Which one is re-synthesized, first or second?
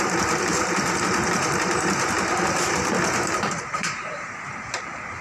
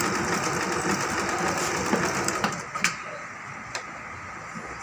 first